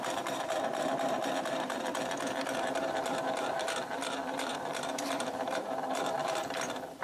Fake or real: fake